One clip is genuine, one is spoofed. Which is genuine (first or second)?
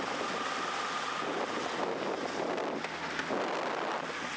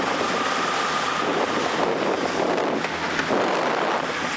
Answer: first